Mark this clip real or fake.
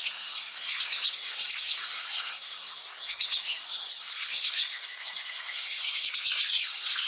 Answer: fake